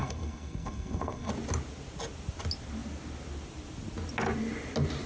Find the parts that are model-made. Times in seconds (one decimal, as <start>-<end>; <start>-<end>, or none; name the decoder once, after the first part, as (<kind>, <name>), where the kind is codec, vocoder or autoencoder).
0.0-1.3 (codec, SNAC)

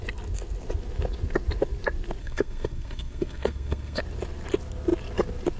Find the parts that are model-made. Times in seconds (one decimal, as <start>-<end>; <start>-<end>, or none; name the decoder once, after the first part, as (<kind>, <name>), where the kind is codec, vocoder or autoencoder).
2.2-4.0 (codec, SNAC)

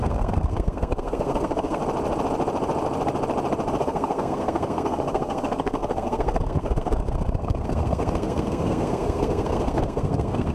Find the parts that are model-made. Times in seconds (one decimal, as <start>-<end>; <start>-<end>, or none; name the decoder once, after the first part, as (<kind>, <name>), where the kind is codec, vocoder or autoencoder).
0.0-1.8 (codec, SNAC); 3.8-10.5

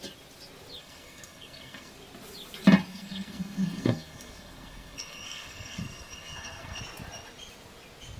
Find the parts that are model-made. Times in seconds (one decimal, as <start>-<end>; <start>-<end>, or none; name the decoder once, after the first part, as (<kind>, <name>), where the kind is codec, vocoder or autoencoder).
0.8-1.9 (codec, SNAC); 2.9-6.8